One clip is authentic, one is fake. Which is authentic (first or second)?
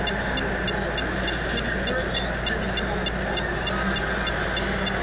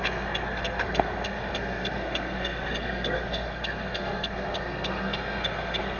first